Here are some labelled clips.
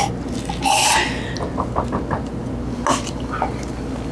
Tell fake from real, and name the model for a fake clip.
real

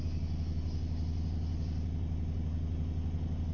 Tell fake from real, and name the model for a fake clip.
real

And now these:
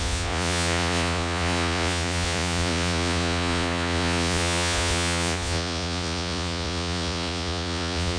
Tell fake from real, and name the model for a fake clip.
fake, vocoder, Vocos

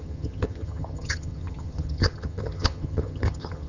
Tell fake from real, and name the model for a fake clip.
fake, vocoder, HiFi-GAN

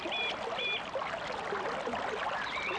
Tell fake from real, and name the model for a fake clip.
real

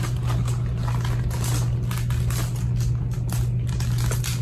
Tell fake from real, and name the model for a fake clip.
real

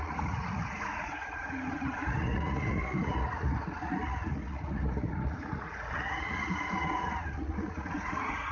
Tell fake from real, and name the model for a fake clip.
fake, vocoder, Vocos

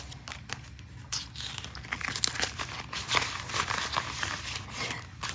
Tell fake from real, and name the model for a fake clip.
real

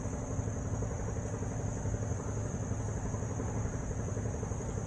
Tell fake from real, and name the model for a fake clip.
real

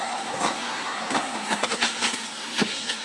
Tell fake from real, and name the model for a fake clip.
fake, codec, SNAC